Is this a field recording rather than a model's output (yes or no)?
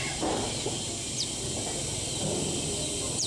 yes